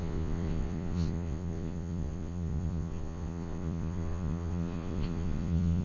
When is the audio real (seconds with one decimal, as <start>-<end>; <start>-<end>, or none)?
none